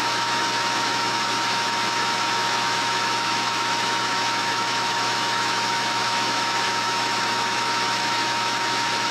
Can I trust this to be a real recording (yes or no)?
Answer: no